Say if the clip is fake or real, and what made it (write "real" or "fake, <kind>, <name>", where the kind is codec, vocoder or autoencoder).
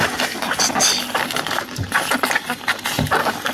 real